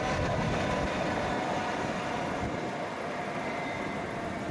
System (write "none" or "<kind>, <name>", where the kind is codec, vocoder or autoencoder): none